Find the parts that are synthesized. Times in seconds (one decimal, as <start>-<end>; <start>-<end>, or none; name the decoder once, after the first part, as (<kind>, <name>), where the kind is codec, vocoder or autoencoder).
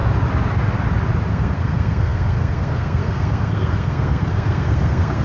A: 1.3-5.2 (codec, SNAC)